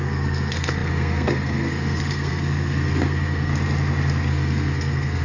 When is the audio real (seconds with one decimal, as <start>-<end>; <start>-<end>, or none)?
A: 3.5-4.3